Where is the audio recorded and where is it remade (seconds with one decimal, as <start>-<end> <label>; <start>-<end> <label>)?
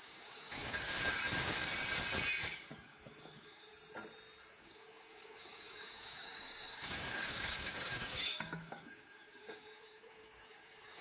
0.0-0.9 remade; 0.9-2.5 recorded; 2.5-3.7 remade; 3.7-4.5 recorded; 4.5-11.0 remade